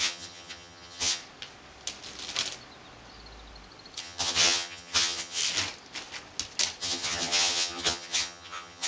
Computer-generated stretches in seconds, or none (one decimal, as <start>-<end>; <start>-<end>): 0.0-1.2; 4.0-5.4; 6.8-8.9